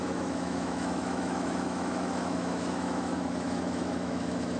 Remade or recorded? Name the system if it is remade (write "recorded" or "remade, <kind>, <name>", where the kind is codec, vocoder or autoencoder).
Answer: remade, autoencoder, DAC-VAE